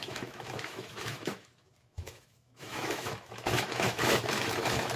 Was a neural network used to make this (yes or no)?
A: yes